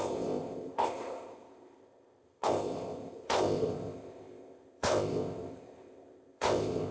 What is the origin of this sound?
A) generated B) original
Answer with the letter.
A